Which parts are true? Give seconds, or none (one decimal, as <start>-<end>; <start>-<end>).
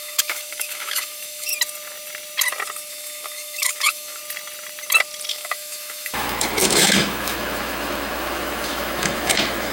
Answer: 1.5-2.9; 4.2-5.3